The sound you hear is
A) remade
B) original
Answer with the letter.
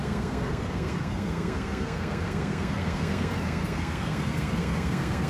A